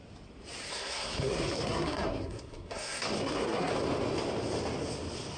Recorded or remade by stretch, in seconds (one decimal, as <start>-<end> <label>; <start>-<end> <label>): 0.0-0.7 recorded; 0.7-3.7 remade; 3.7-5.4 recorded